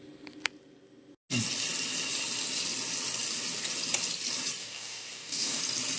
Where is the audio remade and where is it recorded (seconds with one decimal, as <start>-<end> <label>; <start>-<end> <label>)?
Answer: 0.0-4.6 recorded; 4.6-5.6 remade; 5.6-6.0 recorded